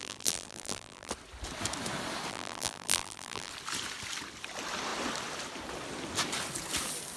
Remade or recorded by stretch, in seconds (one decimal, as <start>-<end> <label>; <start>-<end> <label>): 0.0-1.1 remade; 1.1-2.3 recorded; 2.3-3.5 remade; 3.5-7.2 recorded